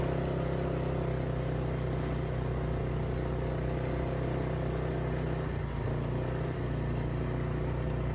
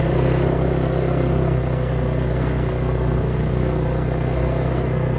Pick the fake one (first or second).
second